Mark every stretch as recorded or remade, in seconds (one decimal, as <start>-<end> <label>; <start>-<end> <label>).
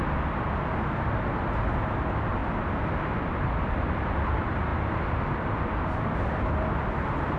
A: 0.0-7.4 recorded